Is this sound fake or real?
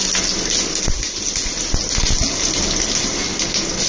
real